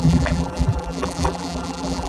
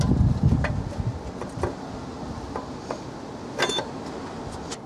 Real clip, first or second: second